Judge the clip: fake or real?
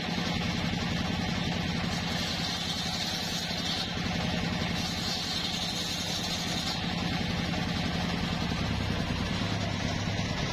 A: real